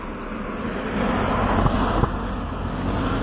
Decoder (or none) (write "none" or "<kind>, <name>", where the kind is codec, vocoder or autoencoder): none